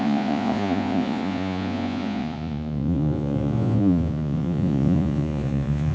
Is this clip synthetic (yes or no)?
yes